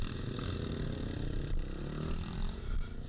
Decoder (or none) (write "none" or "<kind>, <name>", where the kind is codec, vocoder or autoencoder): none